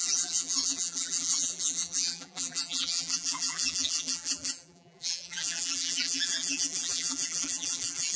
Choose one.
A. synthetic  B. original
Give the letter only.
A